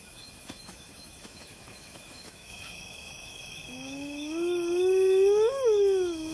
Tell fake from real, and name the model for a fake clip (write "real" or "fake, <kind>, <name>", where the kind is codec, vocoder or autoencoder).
fake, autoencoder, DAC-VAE